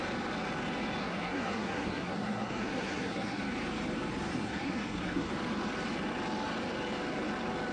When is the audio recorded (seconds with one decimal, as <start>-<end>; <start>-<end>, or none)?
0.0-1.0; 3.4-4.3; 5.3-7.7